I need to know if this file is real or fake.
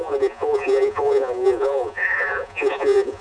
fake